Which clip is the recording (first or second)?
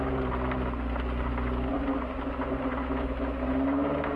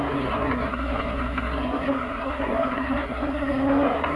first